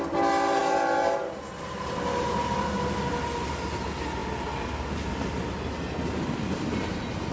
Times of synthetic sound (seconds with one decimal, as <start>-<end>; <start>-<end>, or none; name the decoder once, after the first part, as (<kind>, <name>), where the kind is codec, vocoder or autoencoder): none